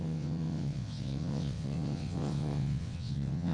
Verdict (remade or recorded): remade